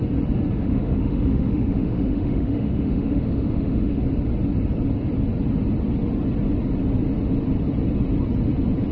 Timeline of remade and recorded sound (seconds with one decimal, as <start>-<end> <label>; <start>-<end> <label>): 0.0-0.6 recorded; 0.6-4.0 remade; 4.0-8.9 recorded